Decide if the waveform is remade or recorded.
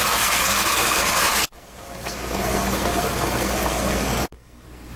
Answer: remade